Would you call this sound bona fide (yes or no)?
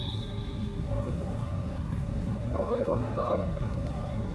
no